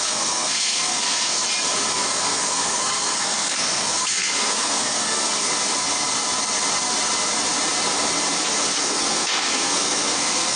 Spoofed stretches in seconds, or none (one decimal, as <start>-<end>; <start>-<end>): 0.0-1.4; 1.9-5.3; 8.8-10.6